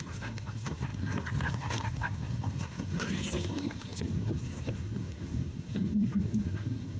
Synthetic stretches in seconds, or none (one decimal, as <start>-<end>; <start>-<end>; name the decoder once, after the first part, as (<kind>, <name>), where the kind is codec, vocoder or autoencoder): 0.0-7.0 (codec, SNAC)